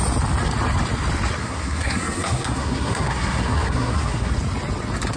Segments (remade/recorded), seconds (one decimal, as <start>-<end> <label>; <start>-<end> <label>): 0.0-1.4 recorded; 1.4-4.3 remade; 4.3-5.2 recorded